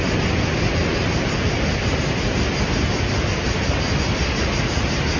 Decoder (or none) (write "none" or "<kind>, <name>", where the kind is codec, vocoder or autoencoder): none